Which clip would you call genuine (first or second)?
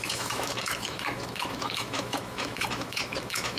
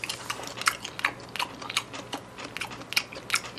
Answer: second